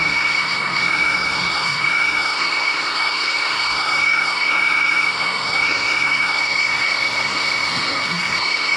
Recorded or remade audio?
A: remade